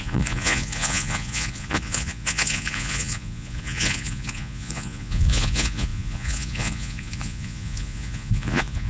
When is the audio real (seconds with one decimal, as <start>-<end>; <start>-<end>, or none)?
none